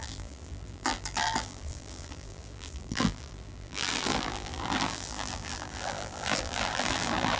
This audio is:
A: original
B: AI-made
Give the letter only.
B